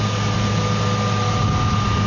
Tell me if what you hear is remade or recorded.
recorded